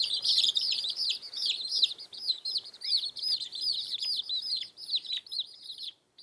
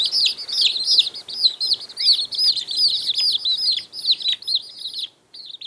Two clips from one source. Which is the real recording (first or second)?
second